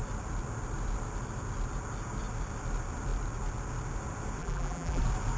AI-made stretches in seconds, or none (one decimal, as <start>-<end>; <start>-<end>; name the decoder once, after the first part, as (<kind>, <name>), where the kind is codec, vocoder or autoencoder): 4.4-5.0 (vocoder, BigVGAN v2)